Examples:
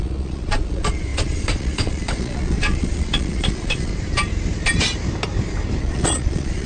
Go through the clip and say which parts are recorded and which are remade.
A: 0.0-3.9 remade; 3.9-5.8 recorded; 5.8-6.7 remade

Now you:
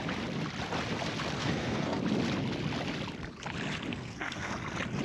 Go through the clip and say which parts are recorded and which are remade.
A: 0.0-1.4 recorded; 1.4-2.0 remade; 2.0-3.9 recorded; 3.9-4.5 remade; 4.5-5.0 recorded

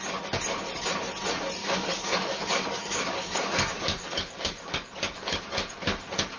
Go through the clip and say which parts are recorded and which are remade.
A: 0.0-1.6 recorded; 1.6-5.4 remade; 5.4-6.4 recorded